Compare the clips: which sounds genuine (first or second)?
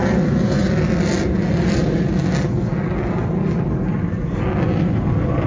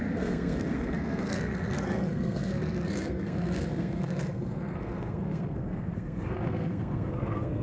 first